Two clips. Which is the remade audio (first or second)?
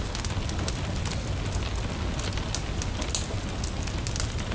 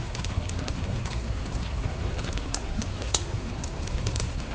second